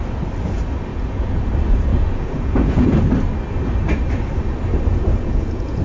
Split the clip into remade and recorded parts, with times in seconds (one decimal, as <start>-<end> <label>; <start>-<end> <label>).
0.0-0.9 recorded; 0.9-1.5 remade; 1.5-1.9 recorded; 1.9-3.0 remade; 3.0-4.9 recorded; 4.9-5.8 remade